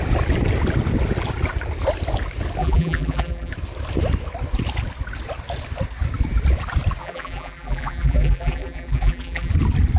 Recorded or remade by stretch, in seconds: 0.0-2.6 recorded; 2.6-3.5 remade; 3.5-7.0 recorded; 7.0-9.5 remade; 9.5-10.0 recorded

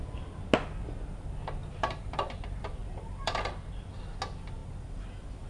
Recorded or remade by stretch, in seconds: 0.0-1.6 recorded; 1.6-2.3 remade; 2.3-2.8 recorded; 2.8-3.5 remade; 3.5-5.5 recorded